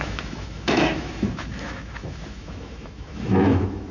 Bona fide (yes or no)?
no